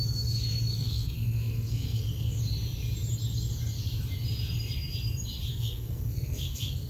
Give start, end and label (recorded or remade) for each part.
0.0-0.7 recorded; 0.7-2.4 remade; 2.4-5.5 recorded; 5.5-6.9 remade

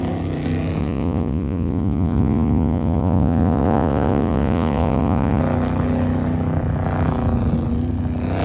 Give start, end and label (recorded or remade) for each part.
0.0-0.8 recorded; 0.8-5.4 remade; 5.4-8.4 recorded

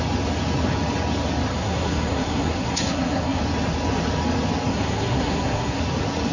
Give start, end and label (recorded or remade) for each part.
0.0-1.5 recorded; 1.5-3.4 remade; 3.4-4.7 recorded; 4.7-5.8 remade; 5.8-6.3 recorded